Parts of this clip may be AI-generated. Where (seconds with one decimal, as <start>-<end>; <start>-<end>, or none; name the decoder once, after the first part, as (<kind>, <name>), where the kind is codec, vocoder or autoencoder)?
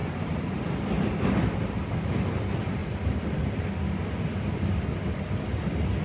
0.0-1.1 (vocoder, BigVGAN v2); 2.8-6.0